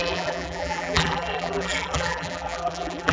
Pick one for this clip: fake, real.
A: fake